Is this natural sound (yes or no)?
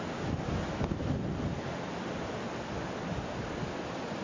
yes